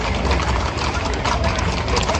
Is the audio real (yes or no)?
yes